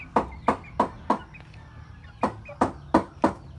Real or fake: real